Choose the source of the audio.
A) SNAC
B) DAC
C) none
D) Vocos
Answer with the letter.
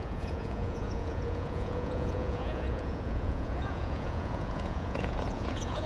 D